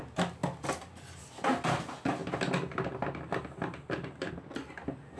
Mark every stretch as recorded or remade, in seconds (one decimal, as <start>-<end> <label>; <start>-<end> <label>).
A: 0.0-2.2 recorded; 2.2-4.3 remade; 4.3-5.2 recorded